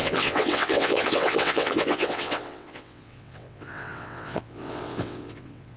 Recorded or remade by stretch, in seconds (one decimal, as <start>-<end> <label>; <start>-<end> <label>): 0.0-5.8 remade